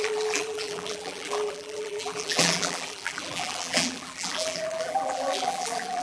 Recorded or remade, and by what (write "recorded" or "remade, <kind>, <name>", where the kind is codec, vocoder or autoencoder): remade, vocoder, BigVGAN v2